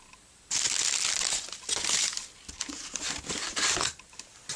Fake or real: real